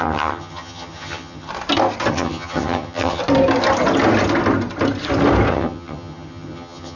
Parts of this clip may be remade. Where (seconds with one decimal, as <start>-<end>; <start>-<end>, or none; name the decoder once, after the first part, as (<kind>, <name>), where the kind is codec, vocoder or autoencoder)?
0.0-1.5 (vocoder, HiFi-GAN); 2.1-3.2; 5.5-7.0